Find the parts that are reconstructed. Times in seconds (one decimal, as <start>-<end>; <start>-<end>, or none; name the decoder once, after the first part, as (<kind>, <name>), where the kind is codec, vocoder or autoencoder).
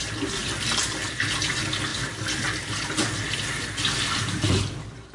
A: none